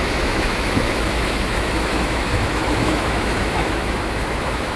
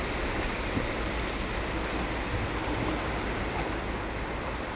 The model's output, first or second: first